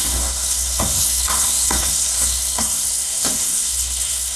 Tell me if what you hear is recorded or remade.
remade